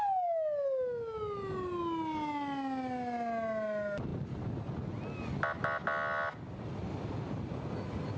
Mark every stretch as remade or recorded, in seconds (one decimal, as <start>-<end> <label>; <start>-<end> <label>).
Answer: 0.0-8.2 recorded